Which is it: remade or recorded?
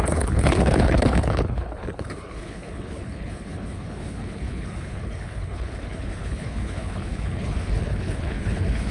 remade